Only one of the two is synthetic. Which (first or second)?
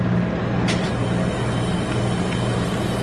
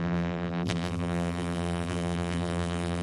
second